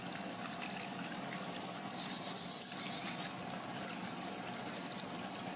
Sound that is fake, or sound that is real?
real